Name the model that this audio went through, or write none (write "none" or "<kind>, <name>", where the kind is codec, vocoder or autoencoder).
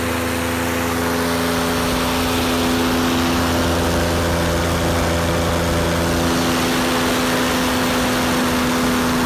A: none